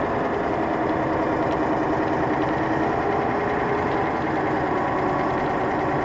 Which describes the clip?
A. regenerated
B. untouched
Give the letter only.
B